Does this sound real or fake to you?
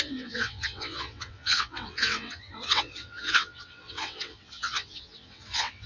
fake